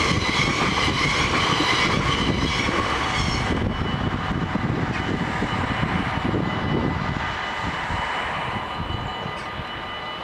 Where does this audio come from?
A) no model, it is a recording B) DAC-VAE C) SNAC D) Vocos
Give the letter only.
A